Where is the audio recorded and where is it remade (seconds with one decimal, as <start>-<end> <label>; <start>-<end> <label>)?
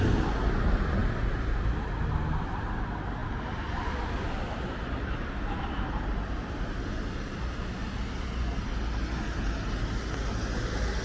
0.0-11.0 recorded